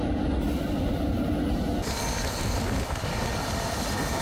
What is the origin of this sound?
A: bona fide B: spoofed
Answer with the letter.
A